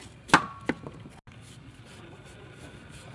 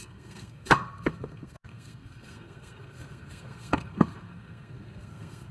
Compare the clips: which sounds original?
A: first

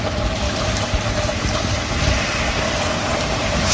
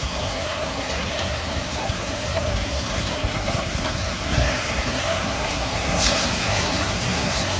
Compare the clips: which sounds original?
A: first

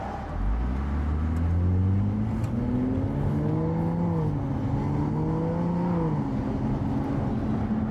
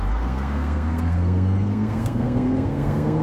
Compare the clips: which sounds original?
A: first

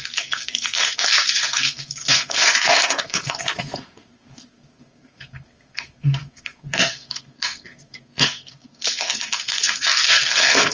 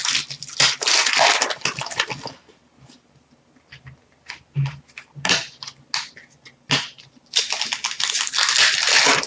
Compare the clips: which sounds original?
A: second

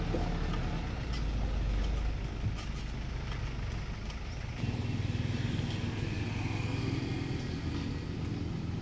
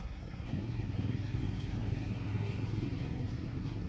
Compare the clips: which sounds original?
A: first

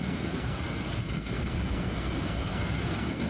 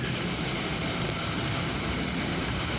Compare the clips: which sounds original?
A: second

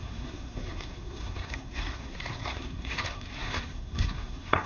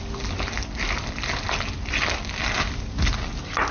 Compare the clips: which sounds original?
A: second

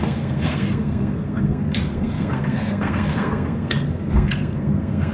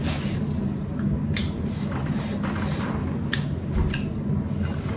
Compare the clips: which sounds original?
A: second